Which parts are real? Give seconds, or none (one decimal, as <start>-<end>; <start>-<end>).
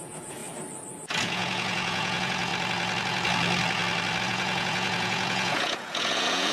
0.4-1.2; 2.5-4.2